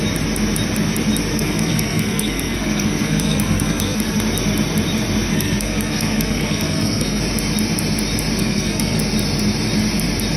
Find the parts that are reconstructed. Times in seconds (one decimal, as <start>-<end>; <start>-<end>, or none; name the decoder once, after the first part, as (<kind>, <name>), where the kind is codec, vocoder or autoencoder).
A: 1.3-4.2 (codec, SNAC); 5.3-7.2; 8.4-9.0